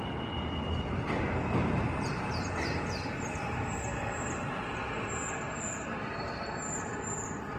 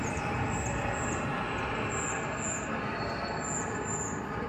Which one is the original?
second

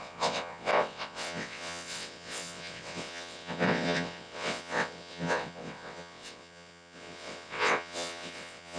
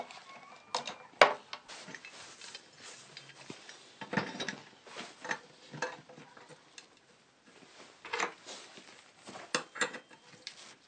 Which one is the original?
second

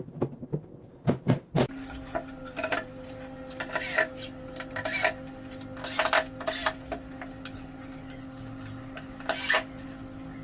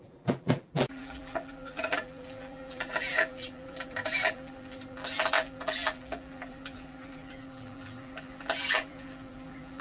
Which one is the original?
first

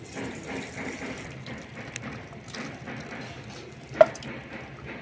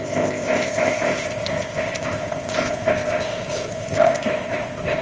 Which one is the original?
first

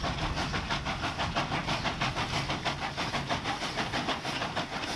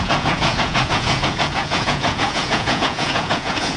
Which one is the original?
first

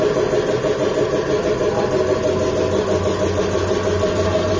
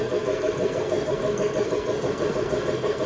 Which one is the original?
first